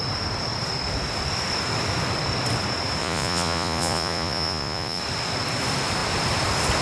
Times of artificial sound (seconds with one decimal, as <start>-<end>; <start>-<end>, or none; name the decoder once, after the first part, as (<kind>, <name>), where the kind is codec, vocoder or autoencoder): 3.0-5.0 (vocoder, Vocos)